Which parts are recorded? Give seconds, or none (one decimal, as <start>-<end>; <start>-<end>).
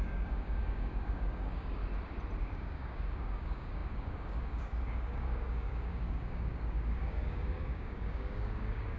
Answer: 1.8-2.4